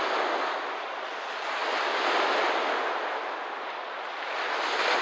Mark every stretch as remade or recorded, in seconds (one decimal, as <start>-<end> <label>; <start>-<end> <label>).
0.0-5.0 recorded